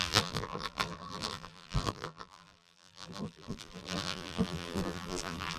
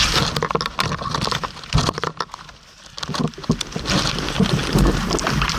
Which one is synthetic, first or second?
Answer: first